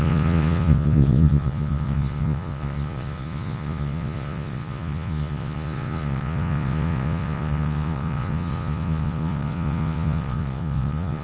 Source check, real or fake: fake